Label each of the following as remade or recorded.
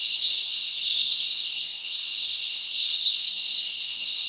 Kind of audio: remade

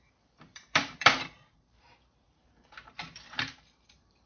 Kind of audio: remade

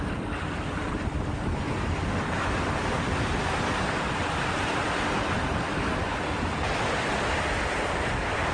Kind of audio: recorded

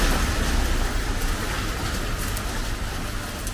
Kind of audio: recorded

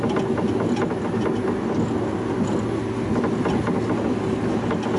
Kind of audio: recorded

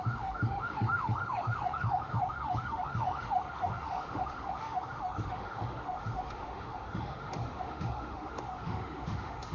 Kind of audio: remade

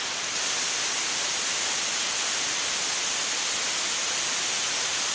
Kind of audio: recorded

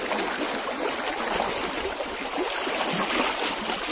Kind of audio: recorded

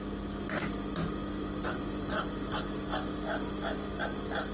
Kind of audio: recorded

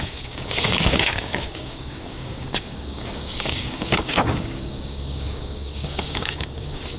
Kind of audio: remade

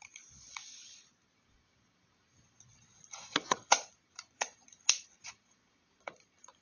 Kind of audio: remade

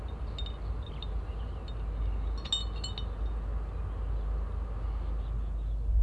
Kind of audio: recorded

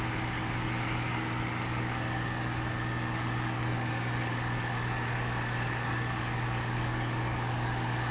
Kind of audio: remade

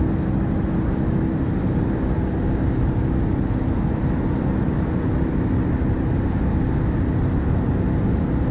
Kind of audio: recorded